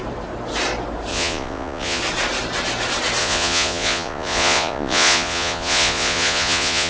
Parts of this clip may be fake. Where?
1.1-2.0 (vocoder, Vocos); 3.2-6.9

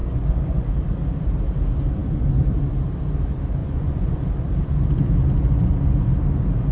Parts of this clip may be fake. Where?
0.0-0.7 (vocoder, Vocos); 3.6-4.3

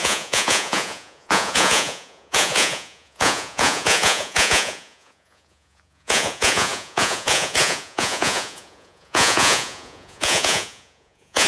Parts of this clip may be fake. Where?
0.0-11.5 (vocoder, Vocos)

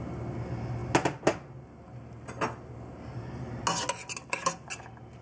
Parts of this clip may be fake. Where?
none

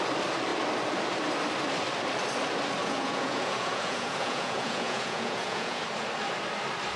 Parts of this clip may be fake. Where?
2.8-5.8 (vocoder, Vocos)

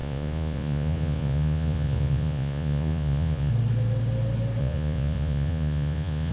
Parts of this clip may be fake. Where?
0.0-3.5 (vocoder, Vocos); 4.6-6.3